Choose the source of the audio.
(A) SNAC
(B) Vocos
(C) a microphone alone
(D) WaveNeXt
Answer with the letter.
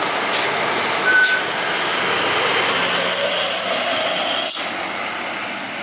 C